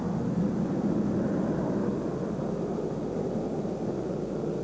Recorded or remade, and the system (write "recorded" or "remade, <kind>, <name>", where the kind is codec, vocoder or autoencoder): recorded